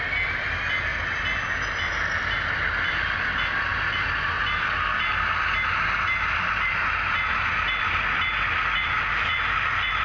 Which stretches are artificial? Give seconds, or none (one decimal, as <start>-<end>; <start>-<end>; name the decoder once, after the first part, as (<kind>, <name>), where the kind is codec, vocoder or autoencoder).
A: none